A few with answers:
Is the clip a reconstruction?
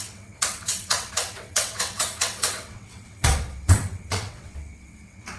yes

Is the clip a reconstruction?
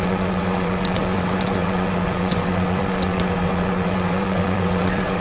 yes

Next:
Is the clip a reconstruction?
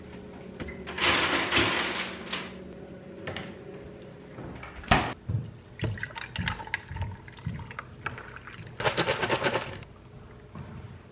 no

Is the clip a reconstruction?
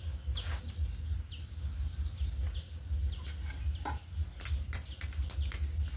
no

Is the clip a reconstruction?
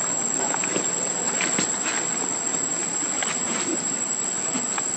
no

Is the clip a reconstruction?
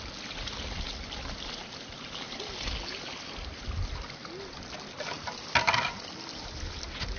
no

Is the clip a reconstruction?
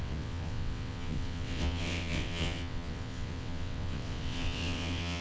yes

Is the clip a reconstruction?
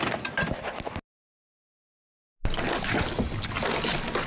no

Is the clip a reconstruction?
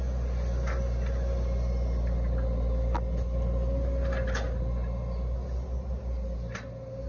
no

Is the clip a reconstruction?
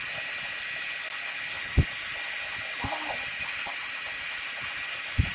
no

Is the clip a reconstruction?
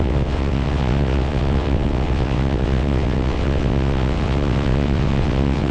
yes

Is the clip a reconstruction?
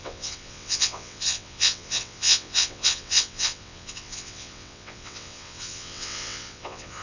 yes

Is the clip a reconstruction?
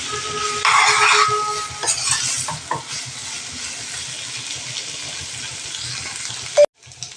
no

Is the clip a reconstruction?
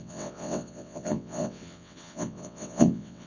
yes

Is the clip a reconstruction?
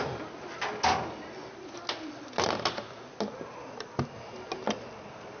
no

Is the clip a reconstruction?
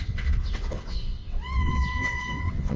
yes